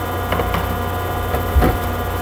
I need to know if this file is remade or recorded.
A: recorded